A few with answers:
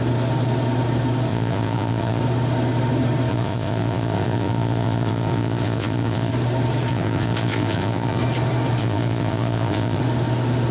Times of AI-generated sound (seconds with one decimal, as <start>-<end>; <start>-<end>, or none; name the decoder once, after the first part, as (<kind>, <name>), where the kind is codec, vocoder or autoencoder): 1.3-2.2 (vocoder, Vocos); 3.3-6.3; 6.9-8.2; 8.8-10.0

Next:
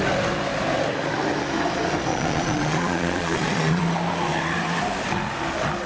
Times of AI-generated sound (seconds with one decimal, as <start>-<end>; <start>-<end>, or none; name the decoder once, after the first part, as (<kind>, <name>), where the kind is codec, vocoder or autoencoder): 2.1-3.8 (vocoder, Vocos)

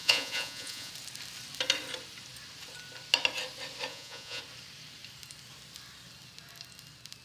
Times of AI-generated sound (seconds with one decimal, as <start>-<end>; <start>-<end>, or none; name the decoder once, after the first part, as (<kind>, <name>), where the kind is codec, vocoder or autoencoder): 0.0-0.9 (vocoder, Vocos); 3.9-4.4